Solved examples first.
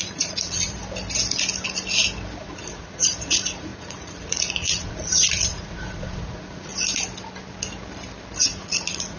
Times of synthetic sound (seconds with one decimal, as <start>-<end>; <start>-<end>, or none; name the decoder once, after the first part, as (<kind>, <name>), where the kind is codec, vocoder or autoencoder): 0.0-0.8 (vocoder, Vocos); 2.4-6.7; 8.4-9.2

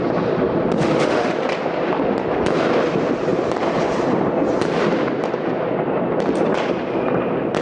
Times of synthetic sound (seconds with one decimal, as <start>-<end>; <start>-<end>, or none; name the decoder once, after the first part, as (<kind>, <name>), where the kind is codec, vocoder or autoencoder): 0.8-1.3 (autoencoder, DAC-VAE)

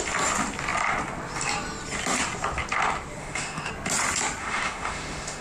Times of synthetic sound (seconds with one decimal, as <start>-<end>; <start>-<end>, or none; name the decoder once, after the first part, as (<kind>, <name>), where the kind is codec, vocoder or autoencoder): 3.2-3.7 (autoencoder, DAC-VAE); 4.4-5.4

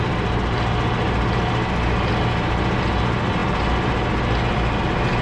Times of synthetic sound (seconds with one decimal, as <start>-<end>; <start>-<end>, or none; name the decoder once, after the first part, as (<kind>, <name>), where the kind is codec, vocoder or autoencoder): none

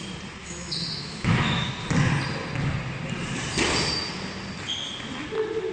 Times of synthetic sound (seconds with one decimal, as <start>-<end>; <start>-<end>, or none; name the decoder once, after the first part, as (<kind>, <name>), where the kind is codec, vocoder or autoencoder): 0.4-1.7 (autoencoder, DAC-VAE)

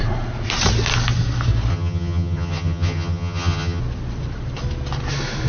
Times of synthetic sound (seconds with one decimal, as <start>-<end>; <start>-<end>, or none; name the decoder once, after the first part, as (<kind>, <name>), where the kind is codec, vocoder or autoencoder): 1.7-3.8 (vocoder, HiFi-GAN)

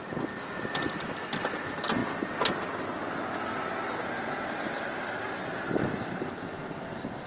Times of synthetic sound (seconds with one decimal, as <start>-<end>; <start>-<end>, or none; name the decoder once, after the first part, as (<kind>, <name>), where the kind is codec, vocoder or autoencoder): none

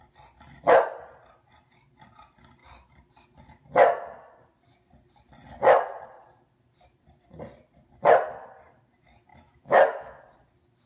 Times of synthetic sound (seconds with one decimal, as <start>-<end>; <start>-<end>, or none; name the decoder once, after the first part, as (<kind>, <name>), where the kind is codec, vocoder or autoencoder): 9.3-10.2 (autoencoder, DAC-VAE)